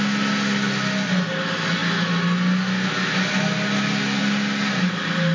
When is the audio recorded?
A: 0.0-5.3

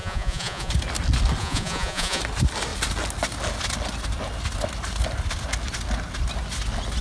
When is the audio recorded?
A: 0.7-1.4; 2.2-7.0

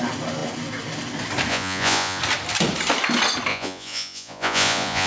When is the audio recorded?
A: 0.0-1.5; 2.2-3.5

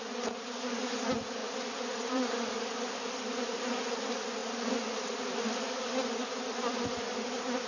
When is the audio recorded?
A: 0.0-1.4; 2.7-4.4

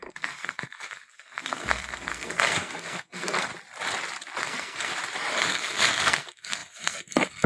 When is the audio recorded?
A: 3.5-4.4; 4.9-5.4

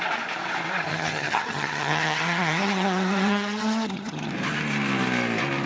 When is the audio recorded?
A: 0.0-0.9; 4.3-5.7

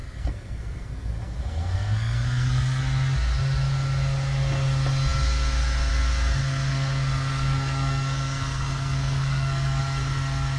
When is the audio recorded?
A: 2.8-6.4; 9.8-10.6

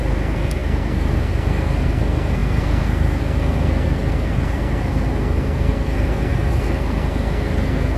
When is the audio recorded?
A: none